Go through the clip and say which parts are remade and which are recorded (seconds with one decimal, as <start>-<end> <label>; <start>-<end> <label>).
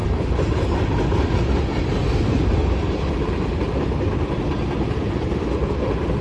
0.0-6.2 recorded